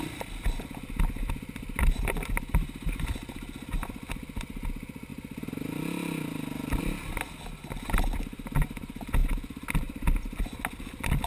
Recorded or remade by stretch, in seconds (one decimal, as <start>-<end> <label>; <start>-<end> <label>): 0.0-11.3 recorded